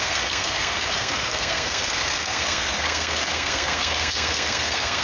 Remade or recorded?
remade